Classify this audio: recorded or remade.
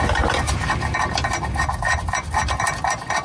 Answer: recorded